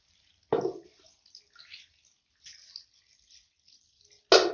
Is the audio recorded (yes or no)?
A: yes